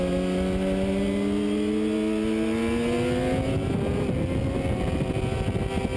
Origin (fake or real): real